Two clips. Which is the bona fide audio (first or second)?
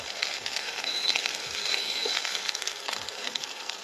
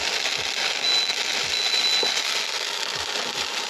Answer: second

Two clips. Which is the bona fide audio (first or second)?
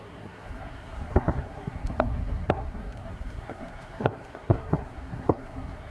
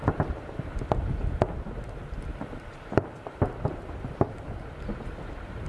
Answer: second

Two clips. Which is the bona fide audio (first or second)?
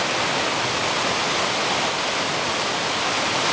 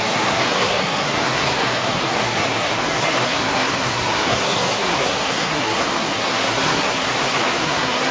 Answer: first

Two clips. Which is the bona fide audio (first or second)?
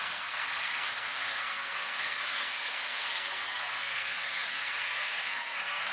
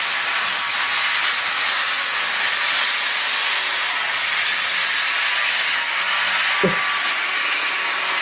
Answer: second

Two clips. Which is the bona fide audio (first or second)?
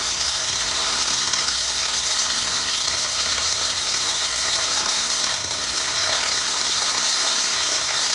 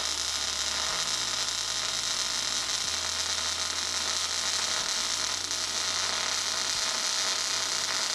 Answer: second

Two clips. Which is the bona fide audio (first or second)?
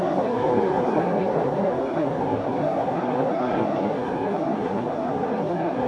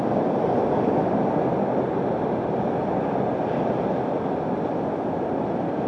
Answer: second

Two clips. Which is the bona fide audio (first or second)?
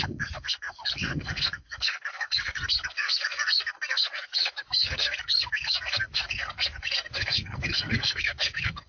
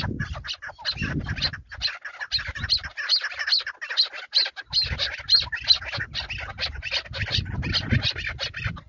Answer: second